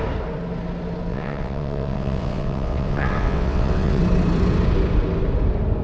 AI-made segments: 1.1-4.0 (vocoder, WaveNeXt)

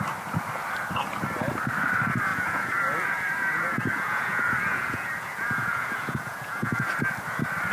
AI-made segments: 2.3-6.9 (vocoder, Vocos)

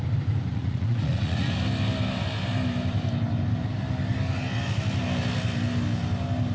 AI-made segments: 0.5-1.5 (vocoder, Vocos)

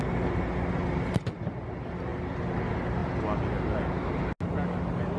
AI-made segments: none

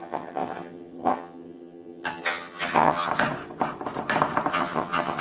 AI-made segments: 0.0-3.1 (vocoder, HiFi-GAN); 4.5-5.2

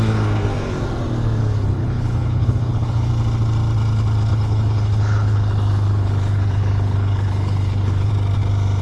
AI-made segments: 1.4-3.1 (codec, HILCodec); 4.3-8.1